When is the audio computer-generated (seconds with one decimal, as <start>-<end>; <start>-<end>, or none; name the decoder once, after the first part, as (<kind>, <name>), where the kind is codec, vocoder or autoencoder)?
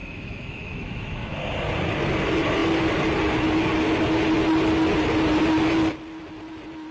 0.0-1.4 (autoencoder, DAC-VAE)